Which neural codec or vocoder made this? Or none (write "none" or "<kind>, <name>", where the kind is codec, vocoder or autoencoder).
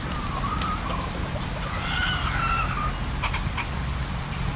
none